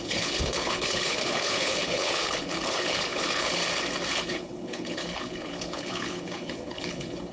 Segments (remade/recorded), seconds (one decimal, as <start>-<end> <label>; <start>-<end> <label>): 0.0-3.6 remade; 3.6-4.1 recorded; 4.1-7.3 remade